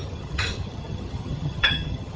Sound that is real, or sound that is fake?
fake